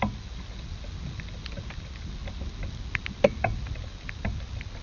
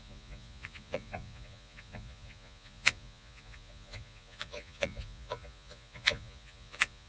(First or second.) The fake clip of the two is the second